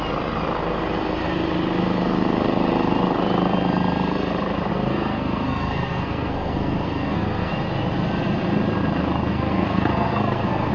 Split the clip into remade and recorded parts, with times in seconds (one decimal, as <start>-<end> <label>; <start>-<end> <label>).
0.0-4.7 recorded; 4.7-7.5 remade; 7.5-9.3 recorded; 9.3-10.7 remade